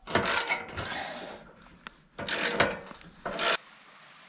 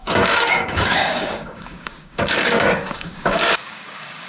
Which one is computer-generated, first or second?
second